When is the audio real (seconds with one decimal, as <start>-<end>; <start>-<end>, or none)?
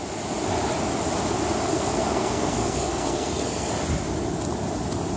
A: 0.0-1.7; 3.7-5.2